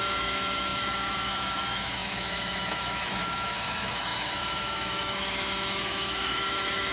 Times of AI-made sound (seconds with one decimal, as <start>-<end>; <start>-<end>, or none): 0.0-6.9